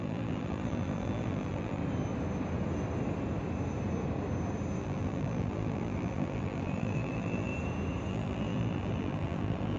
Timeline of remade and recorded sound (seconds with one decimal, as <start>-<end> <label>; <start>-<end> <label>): 0.0-1.8 remade; 1.8-4.8 recorded; 4.8-7.5 remade; 7.5-8.1 recorded; 8.1-9.8 remade